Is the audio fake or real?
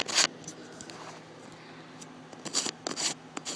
real